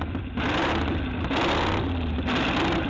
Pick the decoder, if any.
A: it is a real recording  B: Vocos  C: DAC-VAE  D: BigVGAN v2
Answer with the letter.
A